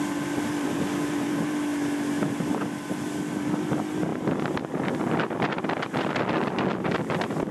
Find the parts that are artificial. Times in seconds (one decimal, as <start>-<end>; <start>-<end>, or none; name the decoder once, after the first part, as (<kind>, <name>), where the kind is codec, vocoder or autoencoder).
0.0-1.7 (vocoder, BigVGAN v2); 2.4-7.5